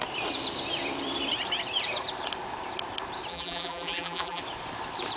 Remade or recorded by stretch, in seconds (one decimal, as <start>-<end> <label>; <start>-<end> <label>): 0.0-3.3 recorded; 3.3-4.4 remade; 4.4-5.2 recorded